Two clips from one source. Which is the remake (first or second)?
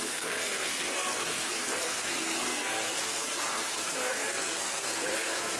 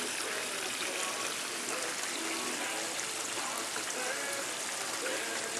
first